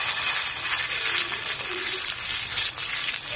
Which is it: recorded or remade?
recorded